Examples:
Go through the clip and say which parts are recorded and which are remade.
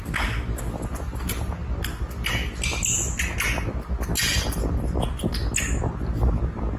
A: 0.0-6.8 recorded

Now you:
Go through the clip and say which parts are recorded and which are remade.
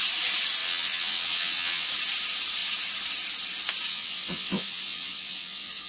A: 0.0-0.6 recorded; 0.6-1.9 remade; 1.9-3.9 recorded; 3.9-5.9 remade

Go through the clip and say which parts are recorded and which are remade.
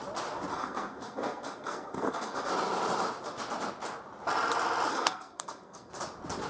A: 0.0-0.5 recorded; 0.5-2.5 remade; 2.5-4.9 recorded; 4.9-5.9 remade; 5.9-6.5 recorded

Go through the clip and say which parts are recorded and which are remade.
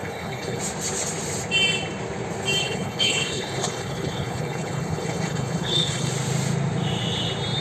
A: 0.0-0.6 remade; 0.6-2.6 recorded; 2.6-6.1 remade; 6.1-7.6 recorded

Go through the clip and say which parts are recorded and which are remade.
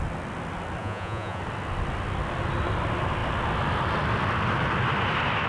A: 0.0-0.8 recorded; 0.8-1.4 remade; 1.4-5.5 recorded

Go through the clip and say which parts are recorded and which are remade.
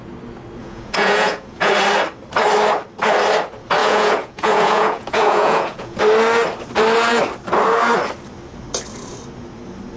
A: 0.0-0.6 recorded; 0.6-1.7 remade; 1.7-3.8 recorded; 3.8-6.0 remade; 6.0-10.0 recorded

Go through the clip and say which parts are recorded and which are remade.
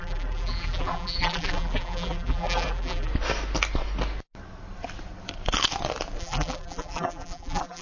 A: 0.0-3.1 remade; 3.1-6.2 recorded; 6.2-7.8 remade